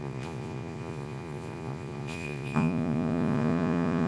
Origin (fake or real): fake